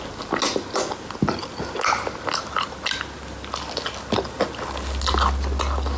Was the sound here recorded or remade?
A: recorded